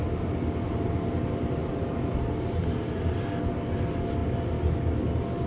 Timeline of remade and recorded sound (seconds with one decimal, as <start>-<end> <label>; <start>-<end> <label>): 0.0-5.5 recorded